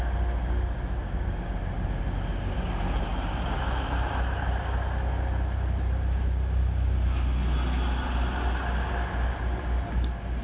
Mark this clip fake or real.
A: real